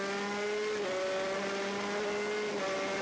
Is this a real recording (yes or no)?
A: yes